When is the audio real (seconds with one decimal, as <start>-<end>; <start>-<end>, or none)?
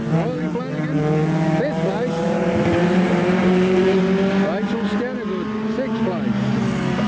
0.0-2.8; 4.0-7.1